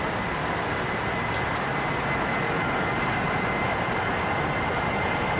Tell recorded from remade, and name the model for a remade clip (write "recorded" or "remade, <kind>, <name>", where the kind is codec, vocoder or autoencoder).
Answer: recorded